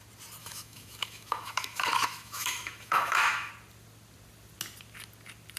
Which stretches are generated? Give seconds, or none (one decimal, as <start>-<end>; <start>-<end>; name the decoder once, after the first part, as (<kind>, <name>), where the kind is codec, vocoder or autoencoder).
0.4-3.5 (autoencoder, DAC-VAE)